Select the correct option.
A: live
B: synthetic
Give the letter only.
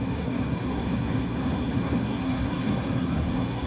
B